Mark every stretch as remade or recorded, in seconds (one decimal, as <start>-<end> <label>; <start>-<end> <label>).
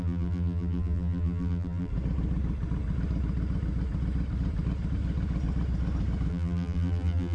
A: 0.0-1.9 remade; 1.9-6.3 recorded; 6.3-7.3 remade